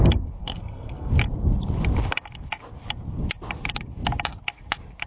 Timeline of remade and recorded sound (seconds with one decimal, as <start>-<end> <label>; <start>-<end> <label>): 0.0-0.4 recorded; 0.4-1.1 remade; 1.1-5.1 recorded